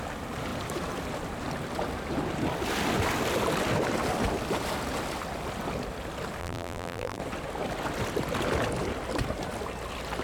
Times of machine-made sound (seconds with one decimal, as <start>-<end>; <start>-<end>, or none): 6.4-7.2